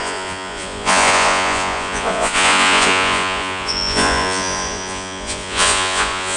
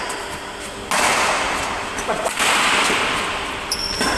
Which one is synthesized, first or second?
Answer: first